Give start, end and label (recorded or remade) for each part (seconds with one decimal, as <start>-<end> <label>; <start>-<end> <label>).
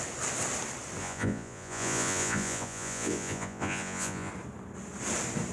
0.0-1.0 recorded; 1.0-4.3 remade; 4.3-5.5 recorded